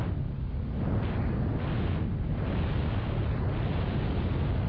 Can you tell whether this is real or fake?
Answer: real